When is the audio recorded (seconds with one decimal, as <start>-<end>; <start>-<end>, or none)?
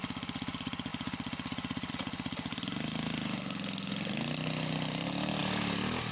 0.0-6.1